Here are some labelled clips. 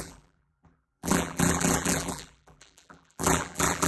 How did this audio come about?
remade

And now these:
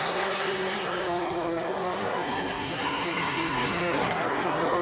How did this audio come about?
remade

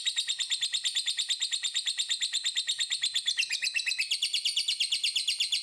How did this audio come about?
recorded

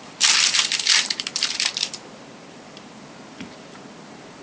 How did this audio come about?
remade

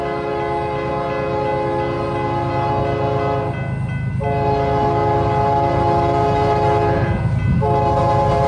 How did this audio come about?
recorded